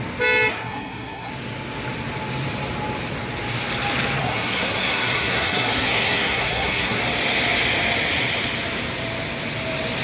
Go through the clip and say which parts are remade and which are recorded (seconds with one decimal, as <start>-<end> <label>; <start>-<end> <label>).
0.0-0.5 recorded; 0.5-1.3 remade; 1.3-4.2 recorded; 4.2-7.0 remade; 7.0-10.0 recorded